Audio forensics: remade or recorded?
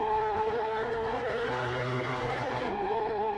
remade